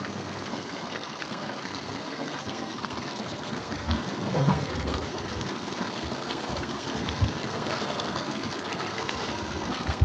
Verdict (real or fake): fake